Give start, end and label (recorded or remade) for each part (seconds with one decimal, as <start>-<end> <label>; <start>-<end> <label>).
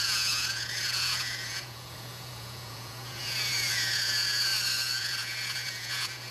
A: 0.0-4.5 remade; 4.5-5.0 recorded; 5.0-6.3 remade